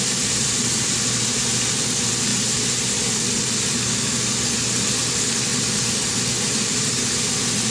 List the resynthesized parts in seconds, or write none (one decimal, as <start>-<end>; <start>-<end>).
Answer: none